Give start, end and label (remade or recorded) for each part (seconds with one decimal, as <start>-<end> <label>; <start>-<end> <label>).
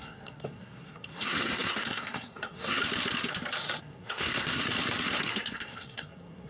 0.0-2.8 remade; 2.8-3.8 recorded; 3.8-4.6 remade; 4.6-5.2 recorded; 5.2-6.5 remade